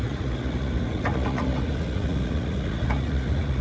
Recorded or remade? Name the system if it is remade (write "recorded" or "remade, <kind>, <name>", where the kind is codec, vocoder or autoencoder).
remade, vocoder, Vocos